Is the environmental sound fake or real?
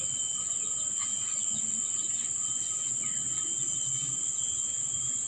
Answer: real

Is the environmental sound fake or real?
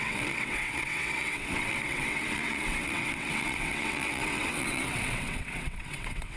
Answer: fake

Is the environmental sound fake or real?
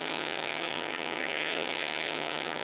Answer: fake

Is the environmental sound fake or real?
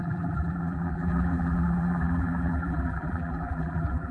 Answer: fake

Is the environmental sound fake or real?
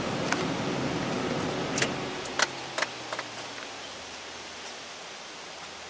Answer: real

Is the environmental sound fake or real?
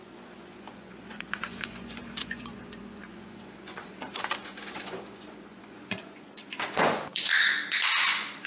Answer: fake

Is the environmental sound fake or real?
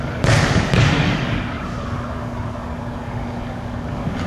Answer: fake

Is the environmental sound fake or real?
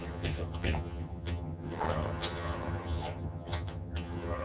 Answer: fake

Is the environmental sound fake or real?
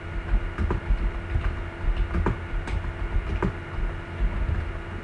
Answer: real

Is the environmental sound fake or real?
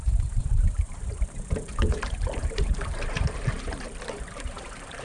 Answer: fake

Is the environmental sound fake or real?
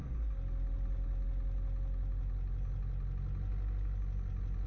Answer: real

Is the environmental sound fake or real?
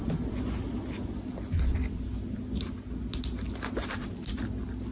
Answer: real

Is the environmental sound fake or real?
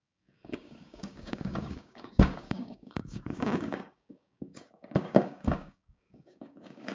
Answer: fake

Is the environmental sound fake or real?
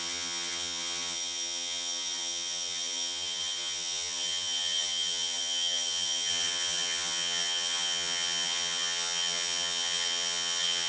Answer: fake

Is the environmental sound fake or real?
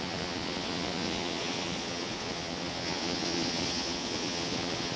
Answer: fake